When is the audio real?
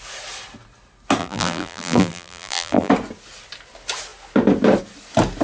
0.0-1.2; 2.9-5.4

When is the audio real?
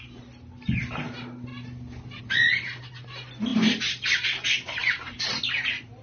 1.5-2.2; 4.8-5.4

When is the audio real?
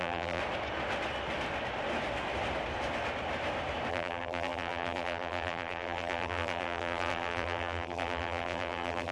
0.4-3.9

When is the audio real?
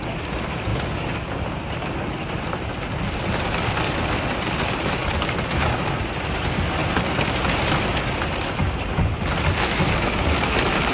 0.7-3.4; 5.0-6.0; 6.8-10.2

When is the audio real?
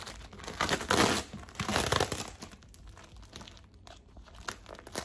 0.0-5.0